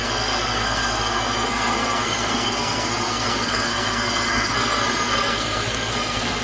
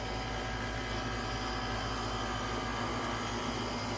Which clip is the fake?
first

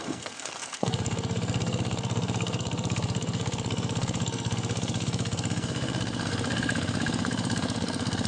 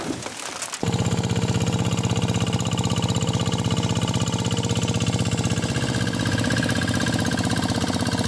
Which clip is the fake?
first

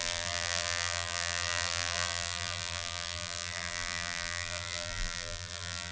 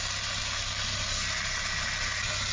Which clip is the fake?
first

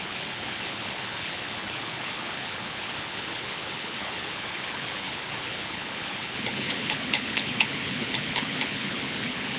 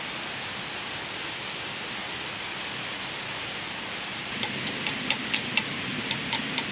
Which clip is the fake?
first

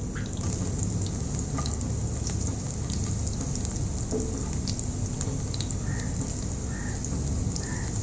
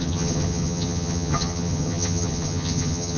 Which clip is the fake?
second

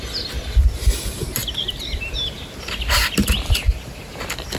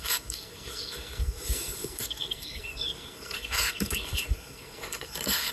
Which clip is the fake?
second